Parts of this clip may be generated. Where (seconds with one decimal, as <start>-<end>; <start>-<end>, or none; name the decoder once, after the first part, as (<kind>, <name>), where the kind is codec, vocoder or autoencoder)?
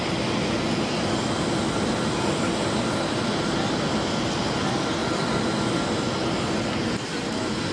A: none